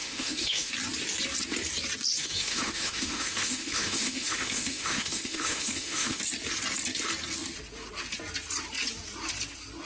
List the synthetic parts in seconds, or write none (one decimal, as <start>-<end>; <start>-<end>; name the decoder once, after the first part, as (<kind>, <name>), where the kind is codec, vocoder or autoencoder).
0.0-0.7 (autoencoder, DAC-VAE); 2.2-6.2